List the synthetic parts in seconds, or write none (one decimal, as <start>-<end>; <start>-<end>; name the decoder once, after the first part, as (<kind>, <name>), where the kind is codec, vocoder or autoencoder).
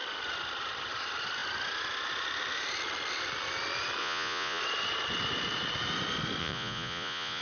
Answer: 4.0-4.6 (vocoder, Vocos); 6.4-7.4